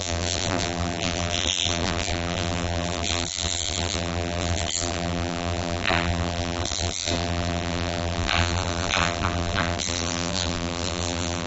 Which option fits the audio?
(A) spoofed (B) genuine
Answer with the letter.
A